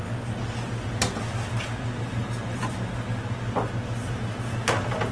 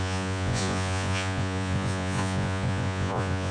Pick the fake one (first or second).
second